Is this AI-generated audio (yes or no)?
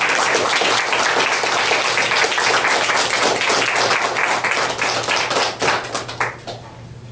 no